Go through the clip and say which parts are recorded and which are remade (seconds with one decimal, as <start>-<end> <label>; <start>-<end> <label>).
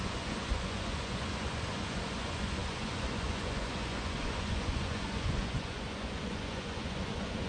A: 0.0-7.5 remade